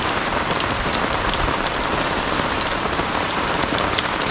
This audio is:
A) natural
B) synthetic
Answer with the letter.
B